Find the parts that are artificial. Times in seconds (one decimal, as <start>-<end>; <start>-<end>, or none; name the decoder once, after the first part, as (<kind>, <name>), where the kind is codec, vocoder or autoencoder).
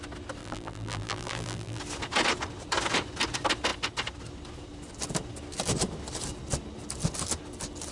0.4-1.8 (vocoder, BigVGAN v2)